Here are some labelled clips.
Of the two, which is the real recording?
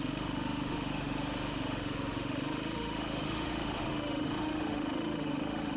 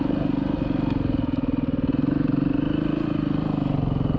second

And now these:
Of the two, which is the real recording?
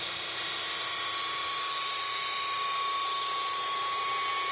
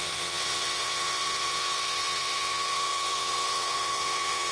first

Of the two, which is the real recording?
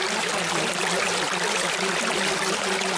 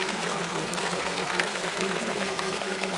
first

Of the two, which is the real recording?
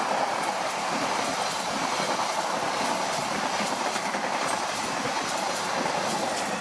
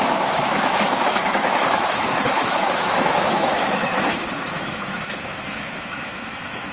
first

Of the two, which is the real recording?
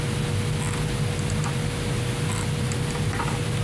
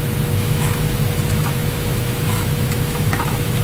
first